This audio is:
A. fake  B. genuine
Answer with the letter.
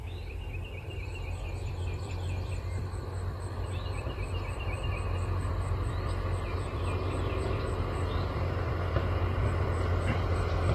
B